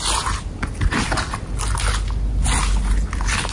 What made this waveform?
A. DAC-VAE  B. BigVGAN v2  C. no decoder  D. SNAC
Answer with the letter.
C